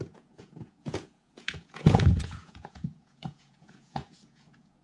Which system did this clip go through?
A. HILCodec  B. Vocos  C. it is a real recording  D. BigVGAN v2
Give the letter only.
B